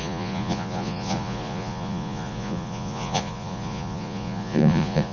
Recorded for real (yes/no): no